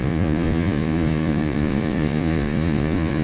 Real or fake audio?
fake